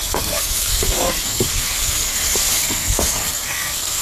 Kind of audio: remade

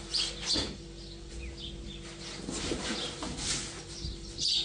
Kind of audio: recorded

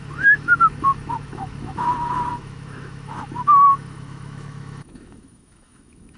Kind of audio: remade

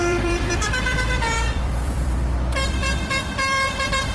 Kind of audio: remade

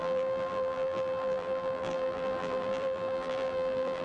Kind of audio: remade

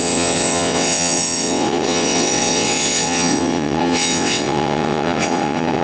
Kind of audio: remade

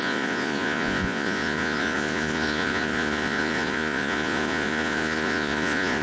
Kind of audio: remade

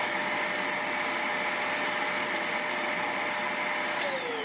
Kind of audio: recorded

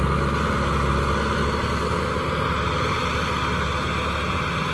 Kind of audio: recorded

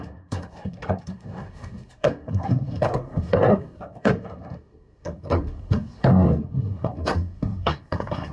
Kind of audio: remade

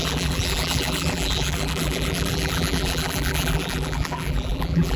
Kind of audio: remade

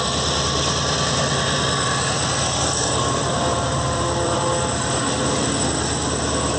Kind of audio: remade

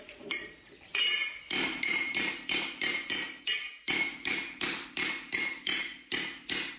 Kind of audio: remade